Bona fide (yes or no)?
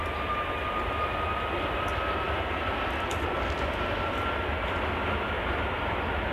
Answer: yes